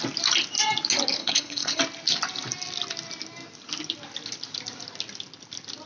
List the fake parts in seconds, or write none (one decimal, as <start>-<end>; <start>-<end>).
1.2-1.8